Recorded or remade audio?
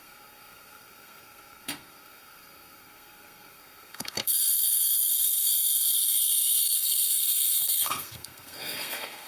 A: remade